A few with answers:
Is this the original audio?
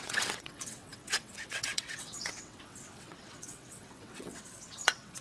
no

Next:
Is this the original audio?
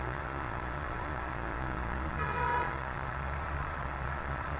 no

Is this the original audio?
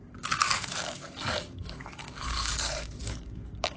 no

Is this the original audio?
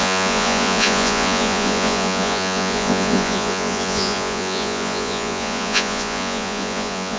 no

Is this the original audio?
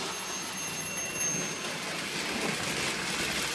yes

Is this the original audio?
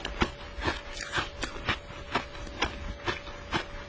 yes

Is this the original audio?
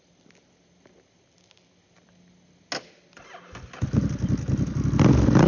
yes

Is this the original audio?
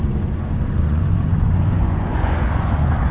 no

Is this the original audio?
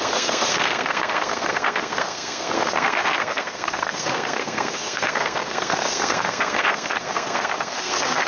no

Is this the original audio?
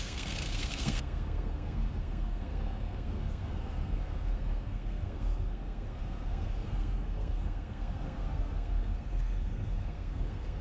no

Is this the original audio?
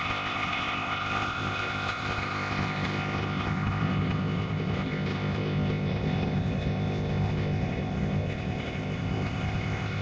no